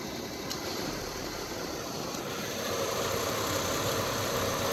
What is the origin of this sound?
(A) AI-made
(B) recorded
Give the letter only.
B